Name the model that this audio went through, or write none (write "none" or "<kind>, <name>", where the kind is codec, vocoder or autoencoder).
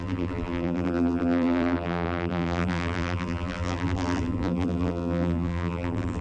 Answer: vocoder, BigVGAN v2